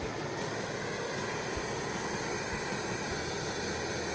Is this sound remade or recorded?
recorded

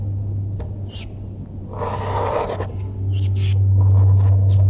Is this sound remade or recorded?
recorded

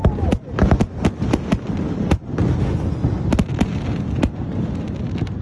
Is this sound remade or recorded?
recorded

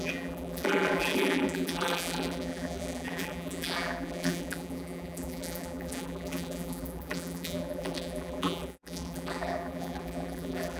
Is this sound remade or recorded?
remade